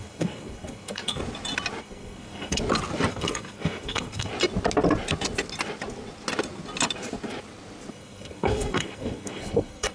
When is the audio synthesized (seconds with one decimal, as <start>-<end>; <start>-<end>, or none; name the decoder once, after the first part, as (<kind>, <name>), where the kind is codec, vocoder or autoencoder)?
0.0-1.2 (codec, SNAC); 1.8-2.6; 3.1-4.3; 7.9-9.9